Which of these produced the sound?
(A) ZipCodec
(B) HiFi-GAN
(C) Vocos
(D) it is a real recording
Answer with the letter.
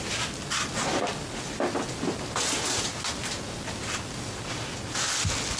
D